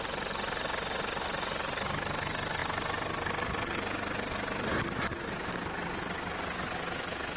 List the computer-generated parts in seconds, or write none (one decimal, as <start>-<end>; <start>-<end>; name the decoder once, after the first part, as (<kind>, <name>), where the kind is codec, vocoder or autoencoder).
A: none

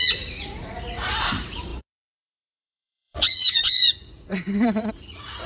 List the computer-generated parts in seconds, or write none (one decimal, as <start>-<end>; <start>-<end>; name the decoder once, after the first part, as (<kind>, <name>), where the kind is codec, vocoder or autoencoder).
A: 0.0-5.5 (vocoder, Vocos)

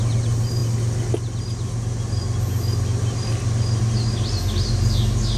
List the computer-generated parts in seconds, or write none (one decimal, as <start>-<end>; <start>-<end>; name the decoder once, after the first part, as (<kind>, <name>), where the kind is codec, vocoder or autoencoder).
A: none

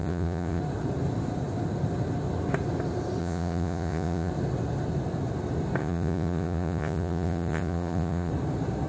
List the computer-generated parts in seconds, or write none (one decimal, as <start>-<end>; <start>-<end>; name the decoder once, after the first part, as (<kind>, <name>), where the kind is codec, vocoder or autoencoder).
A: 0.0-0.6 (vocoder, Vocos); 3.2-4.3; 5.8-8.3

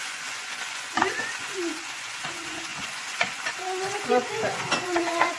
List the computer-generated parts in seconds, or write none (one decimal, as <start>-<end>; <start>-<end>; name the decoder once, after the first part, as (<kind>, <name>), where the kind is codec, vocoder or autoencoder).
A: 0.0-5.4 (vocoder, Vocos)

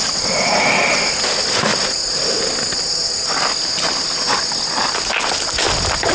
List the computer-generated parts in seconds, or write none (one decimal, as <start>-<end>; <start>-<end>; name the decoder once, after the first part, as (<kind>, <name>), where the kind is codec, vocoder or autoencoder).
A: none